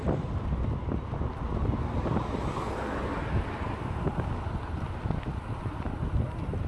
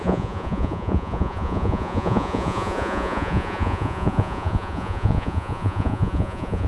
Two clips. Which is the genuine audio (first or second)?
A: first